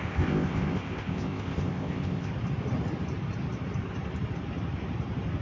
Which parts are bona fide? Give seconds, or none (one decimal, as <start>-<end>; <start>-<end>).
2.3-5.4